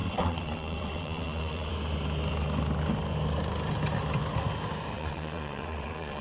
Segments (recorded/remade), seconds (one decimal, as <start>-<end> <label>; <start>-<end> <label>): 0.0-1.7 remade; 1.7-4.9 recorded; 4.9-6.2 remade